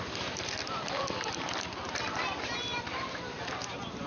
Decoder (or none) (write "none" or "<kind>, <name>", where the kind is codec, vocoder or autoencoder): vocoder, BigVGAN v2